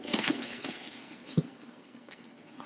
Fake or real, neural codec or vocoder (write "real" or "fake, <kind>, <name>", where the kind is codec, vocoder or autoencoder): fake, codec, SNAC